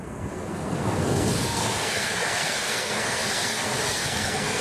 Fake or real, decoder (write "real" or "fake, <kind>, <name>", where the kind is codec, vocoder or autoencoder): fake, codec, SNAC